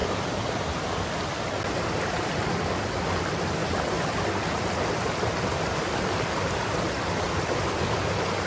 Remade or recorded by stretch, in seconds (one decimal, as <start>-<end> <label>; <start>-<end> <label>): 0.0-2.0 recorded; 2.0-8.5 remade